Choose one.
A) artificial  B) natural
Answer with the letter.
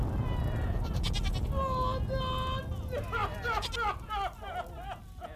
B